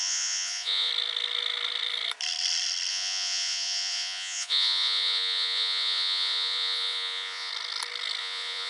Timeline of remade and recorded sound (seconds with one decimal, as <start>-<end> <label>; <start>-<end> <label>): 0.0-0.9 remade; 0.9-2.9 recorded; 2.9-7.5 remade; 7.5-8.2 recorded; 8.2-8.7 remade